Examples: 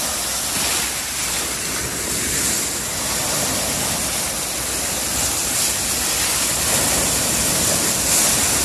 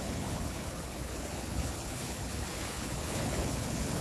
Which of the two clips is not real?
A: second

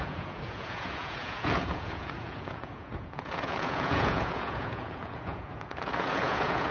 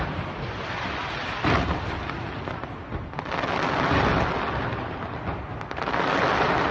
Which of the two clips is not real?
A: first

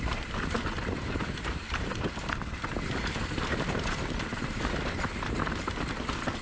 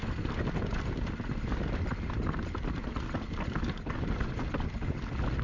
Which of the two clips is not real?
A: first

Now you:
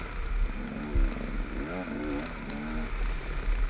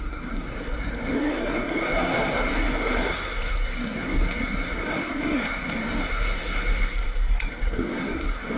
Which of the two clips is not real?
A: second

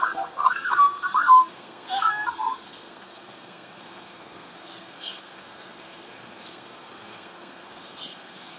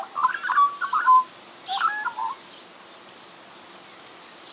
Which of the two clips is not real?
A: first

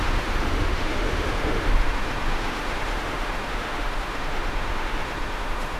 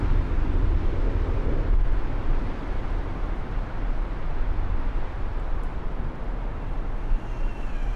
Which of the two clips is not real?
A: first